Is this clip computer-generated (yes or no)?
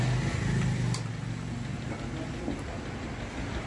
no